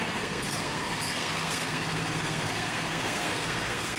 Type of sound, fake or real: fake